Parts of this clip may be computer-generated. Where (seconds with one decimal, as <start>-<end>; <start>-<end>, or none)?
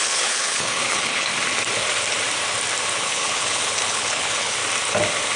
0.0-1.3; 2.9-4.6